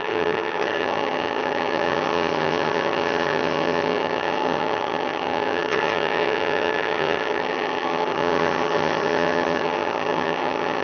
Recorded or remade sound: remade